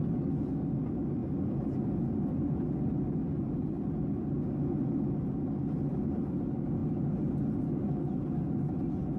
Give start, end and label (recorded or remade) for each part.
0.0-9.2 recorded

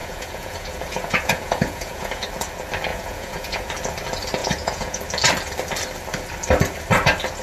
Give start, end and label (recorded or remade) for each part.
0.0-2.2 remade; 2.2-2.9 recorded; 2.9-3.7 remade; 3.7-4.4 recorded; 4.4-5.0 remade; 5.0-7.4 recorded

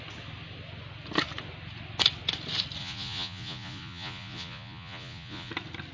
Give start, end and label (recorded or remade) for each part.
0.0-2.8 recorded; 2.8-5.5 remade; 5.5-5.9 recorded

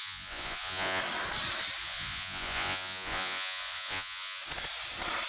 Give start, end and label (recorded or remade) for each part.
0.0-1.0 remade; 1.0-1.8 recorded; 1.8-4.4 remade; 4.4-5.3 recorded